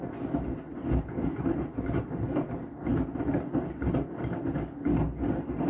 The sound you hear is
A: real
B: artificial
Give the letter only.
A